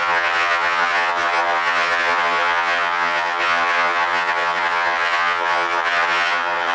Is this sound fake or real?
fake